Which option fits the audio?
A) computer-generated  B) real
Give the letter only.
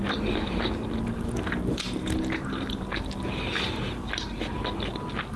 B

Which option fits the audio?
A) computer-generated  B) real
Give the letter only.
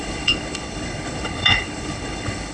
A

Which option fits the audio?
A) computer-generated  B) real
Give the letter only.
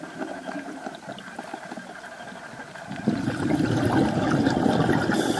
B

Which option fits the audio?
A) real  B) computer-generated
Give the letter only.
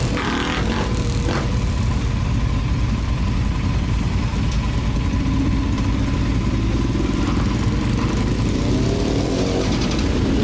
A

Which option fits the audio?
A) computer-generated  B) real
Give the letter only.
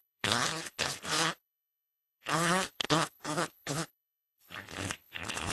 A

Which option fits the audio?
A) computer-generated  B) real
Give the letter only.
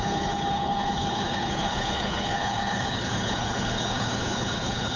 A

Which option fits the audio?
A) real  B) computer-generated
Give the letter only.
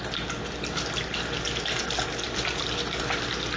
A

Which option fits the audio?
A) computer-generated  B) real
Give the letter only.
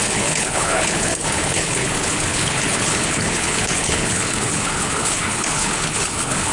A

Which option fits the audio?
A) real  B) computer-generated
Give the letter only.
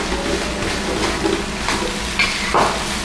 A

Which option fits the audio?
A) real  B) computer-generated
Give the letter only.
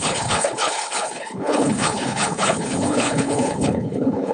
B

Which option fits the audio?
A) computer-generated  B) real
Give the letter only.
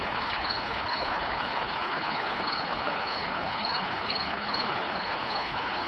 A